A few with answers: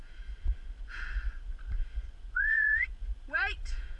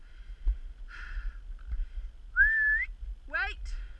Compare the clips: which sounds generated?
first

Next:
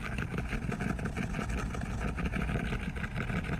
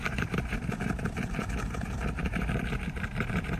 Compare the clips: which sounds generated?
second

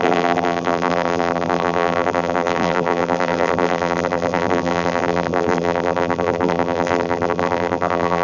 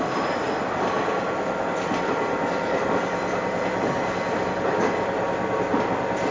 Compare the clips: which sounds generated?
first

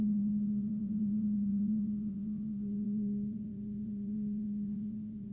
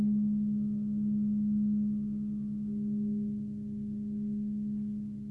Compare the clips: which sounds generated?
first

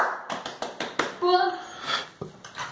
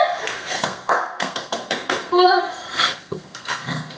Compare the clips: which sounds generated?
second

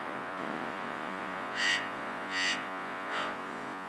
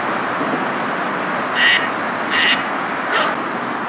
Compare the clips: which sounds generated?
first